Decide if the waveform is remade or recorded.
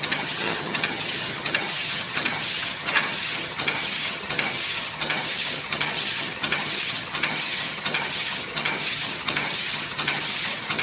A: remade